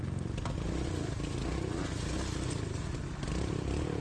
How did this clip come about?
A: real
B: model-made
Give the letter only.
A